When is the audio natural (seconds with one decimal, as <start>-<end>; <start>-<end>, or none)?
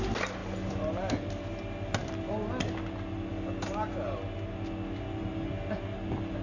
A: 0.0-6.4